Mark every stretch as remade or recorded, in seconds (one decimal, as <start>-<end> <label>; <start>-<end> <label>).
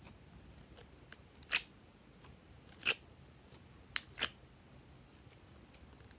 0.0-6.2 recorded